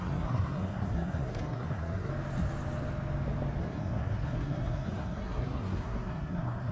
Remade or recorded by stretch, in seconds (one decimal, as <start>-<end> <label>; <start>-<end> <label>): 0.0-2.1 remade; 2.1-3.6 recorded; 3.6-6.7 remade

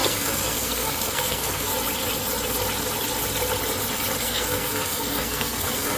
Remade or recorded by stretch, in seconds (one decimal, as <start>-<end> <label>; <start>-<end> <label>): 0.0-1.7 remade; 1.7-4.2 recorded; 4.2-6.0 remade

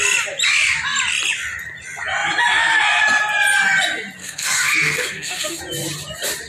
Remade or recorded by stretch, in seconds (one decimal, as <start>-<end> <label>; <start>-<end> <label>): 0.0-4.2 recorded; 4.2-5.6 remade; 5.6-6.5 recorded

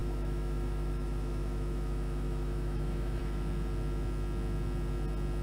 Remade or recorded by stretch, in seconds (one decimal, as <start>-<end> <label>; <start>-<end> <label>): 0.0-3.2 remade; 3.2-5.4 recorded

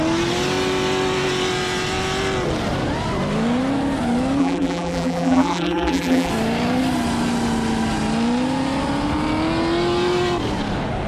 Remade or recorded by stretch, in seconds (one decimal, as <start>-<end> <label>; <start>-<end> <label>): 0.0-4.4 recorded; 4.4-6.3 remade; 6.3-11.1 recorded

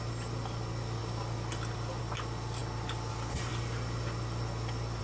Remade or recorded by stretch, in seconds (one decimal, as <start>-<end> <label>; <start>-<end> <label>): 0.0-5.0 recorded